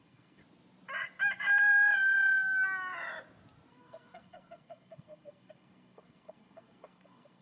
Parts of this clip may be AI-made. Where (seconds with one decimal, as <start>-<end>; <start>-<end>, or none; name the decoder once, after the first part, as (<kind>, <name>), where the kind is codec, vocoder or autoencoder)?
0.0-0.4 (codec, SNAC); 3.7-7.4